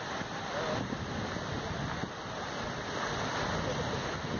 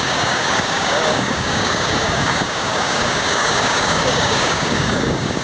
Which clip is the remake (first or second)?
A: second